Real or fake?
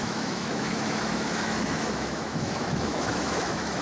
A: fake